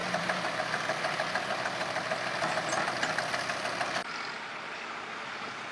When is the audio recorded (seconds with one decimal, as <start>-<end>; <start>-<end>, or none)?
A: 0.6-5.7